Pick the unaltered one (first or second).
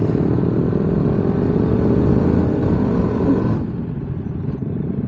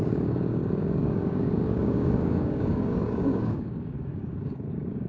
first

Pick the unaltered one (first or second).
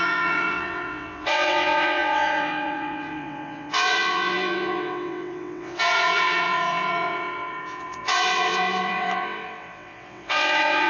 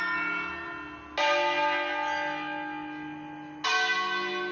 second